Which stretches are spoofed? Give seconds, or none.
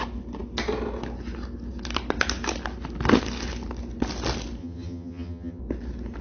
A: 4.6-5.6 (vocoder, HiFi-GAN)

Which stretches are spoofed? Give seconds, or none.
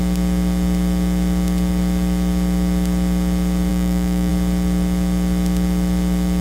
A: 3.7-4.3 (autoencoder, DAC-VAE)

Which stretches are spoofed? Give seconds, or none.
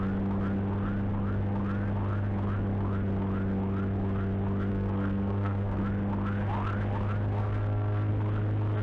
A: 4.7-5.8 (codec, SNAC); 7.4-8.1